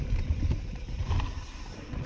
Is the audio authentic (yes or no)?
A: yes